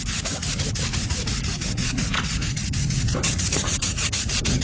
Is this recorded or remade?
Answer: remade